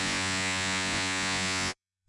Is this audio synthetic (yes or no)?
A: yes